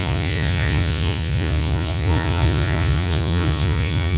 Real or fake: fake